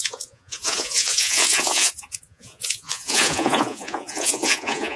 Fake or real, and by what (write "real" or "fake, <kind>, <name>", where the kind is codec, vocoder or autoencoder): fake, vocoder, Vocos